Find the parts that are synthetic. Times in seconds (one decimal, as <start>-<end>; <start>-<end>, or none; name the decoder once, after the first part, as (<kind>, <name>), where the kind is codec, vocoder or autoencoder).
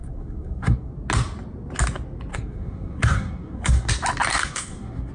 0.0-0.9 (codec, SNAC); 2.3-3.9; 4.3-5.1